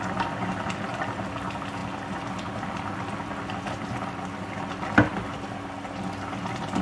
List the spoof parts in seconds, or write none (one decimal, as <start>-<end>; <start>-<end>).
none